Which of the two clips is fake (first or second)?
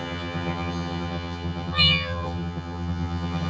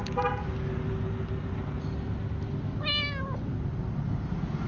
first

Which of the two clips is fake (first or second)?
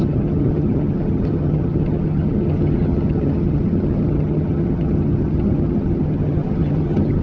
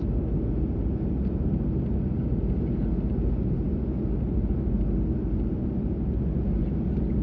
first